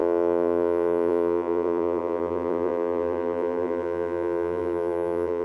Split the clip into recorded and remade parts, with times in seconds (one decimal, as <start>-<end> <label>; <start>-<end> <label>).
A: 0.0-5.4 remade